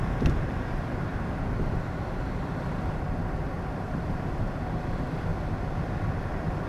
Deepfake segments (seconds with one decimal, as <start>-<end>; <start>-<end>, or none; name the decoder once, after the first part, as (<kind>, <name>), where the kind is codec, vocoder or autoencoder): 0.0-1.1 (vocoder, BigVGAN v2); 2.2-5.3; 6.0-6.7